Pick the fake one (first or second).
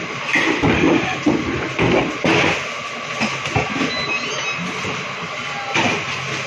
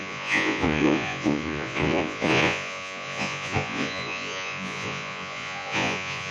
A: second